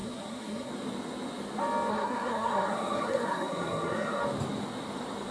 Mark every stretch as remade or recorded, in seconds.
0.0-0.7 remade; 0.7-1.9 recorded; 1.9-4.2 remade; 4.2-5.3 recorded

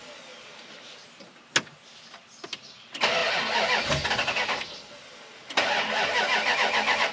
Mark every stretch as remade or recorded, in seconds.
0.0-7.1 recorded

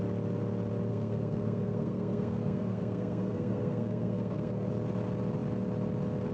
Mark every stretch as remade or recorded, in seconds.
0.0-0.9 recorded; 0.9-4.7 remade; 4.7-6.3 recorded